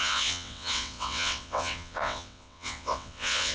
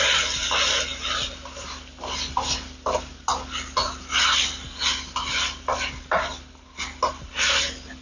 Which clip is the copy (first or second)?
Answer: first